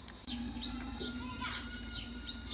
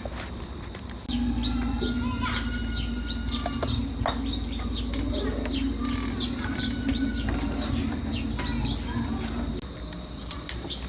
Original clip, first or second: second